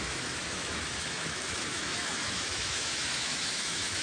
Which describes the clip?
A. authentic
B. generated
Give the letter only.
B